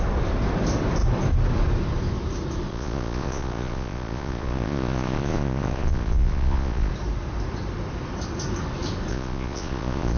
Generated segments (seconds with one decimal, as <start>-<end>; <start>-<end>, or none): 2.7-6.9; 9.1-10.2